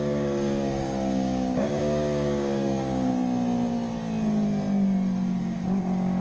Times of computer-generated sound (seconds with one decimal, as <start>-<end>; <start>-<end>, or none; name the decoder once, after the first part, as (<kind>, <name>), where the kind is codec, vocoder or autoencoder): 0.0-3.1 (codec, DAC); 5.4-6.2